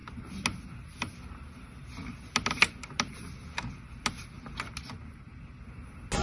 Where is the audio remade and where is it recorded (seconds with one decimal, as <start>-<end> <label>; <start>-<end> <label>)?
0.0-6.2 recorded